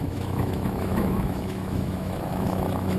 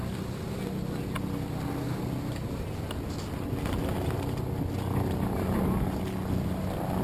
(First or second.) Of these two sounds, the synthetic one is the first